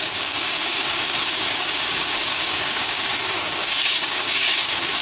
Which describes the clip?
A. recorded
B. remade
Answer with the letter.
B